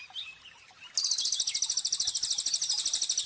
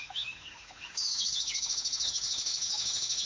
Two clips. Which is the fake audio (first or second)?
second